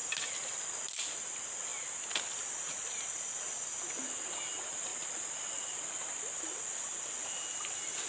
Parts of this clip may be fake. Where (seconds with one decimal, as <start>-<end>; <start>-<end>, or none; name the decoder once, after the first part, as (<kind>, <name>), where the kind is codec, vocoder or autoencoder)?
none